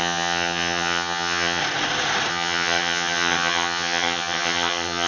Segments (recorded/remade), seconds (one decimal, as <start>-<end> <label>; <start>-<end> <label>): 0.0-1.6 remade; 1.6-2.3 recorded; 2.3-5.1 remade